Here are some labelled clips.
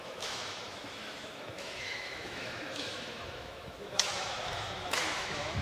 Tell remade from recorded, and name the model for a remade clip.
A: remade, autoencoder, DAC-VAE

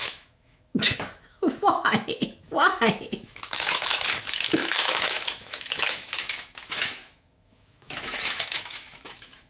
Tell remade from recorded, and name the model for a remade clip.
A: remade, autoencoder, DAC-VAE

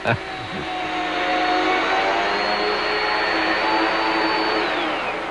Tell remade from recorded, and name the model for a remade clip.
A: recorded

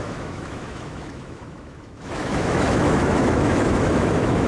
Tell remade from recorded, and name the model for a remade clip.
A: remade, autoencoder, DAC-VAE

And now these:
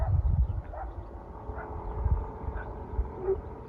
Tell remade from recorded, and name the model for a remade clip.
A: recorded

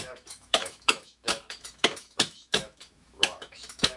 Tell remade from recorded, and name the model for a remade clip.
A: remade, autoencoder, DAC-VAE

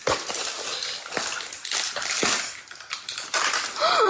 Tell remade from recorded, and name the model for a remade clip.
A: recorded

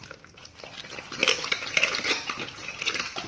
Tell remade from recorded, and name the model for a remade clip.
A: recorded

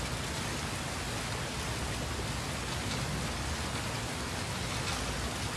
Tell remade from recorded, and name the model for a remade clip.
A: recorded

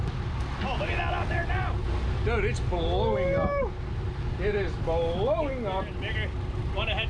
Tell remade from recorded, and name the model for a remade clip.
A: recorded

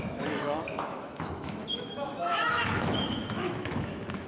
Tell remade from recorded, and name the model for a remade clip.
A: remade, autoencoder, DAC-VAE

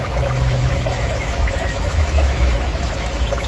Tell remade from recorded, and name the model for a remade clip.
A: remade, autoencoder, DAC-VAE